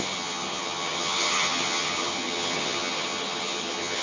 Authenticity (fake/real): fake